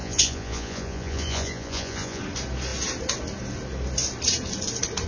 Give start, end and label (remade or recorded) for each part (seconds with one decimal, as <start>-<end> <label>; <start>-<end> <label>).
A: 0.0-2.2 remade; 2.2-5.1 recorded